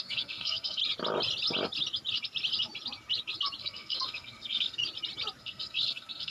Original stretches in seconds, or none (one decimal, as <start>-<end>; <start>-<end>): 0.8-3.6; 4.8-5.4